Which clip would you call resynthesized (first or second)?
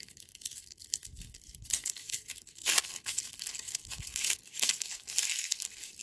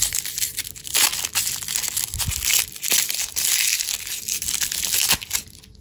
first